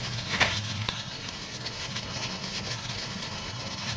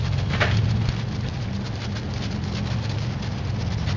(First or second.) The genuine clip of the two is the second